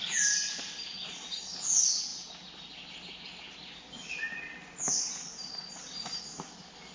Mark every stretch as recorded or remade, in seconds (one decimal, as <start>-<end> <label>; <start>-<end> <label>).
0.0-6.9 recorded